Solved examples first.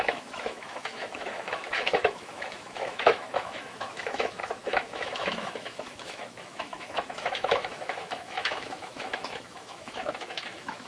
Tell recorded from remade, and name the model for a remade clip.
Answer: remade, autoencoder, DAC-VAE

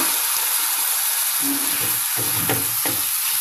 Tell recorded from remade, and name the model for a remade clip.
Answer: recorded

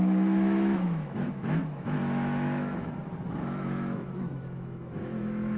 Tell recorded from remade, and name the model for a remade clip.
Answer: remade, autoencoder, DAC-VAE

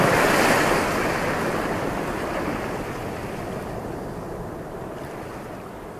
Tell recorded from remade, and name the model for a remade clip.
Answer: recorded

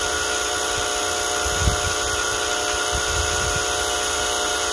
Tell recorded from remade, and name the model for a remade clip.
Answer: recorded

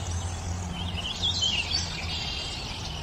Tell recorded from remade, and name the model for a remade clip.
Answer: recorded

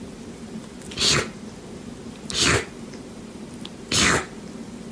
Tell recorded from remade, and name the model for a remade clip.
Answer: recorded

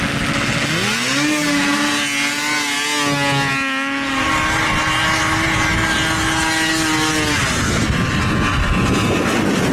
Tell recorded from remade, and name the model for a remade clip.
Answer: recorded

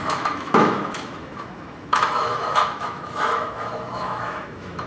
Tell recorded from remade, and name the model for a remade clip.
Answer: remade, autoencoder, DAC-VAE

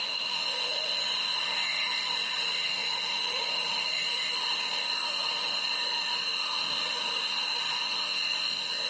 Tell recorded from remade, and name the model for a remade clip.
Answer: remade, autoencoder, DAC-VAE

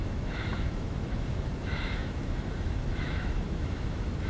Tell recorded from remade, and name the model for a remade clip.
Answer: remade, autoencoder, DAC-VAE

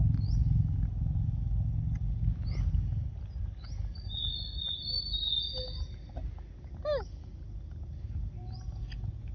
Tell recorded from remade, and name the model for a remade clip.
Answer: recorded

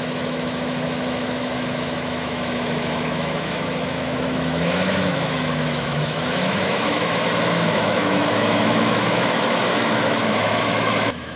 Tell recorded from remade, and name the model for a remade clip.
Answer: remade, autoencoder, DAC-VAE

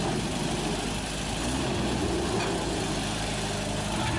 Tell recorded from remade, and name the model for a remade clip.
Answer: recorded